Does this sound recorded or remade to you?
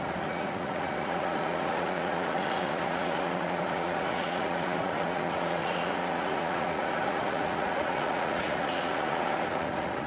remade